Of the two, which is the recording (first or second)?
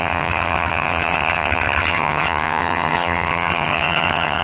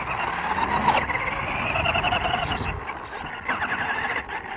second